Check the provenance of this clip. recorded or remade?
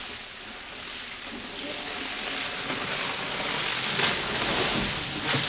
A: recorded